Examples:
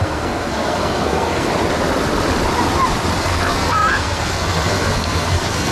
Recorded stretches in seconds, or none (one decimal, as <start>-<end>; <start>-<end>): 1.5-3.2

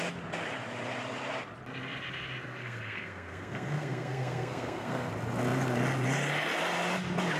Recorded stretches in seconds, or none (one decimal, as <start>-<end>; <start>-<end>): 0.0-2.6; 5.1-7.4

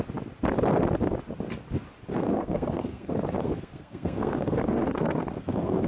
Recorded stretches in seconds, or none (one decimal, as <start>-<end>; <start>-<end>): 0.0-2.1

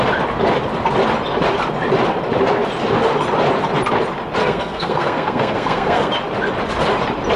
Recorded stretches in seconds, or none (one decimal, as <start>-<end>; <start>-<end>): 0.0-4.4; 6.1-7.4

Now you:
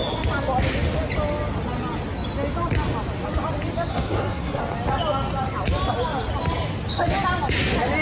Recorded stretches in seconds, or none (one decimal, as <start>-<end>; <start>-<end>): 0.0-3.9; 4.6-8.0

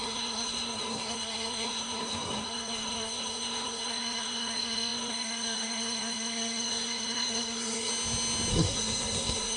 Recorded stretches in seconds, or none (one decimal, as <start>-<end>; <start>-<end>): 7.9-8.5

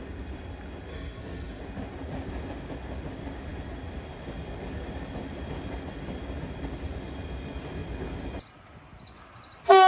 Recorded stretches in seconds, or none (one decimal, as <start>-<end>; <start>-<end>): 0.0-0.9; 1.6-9.9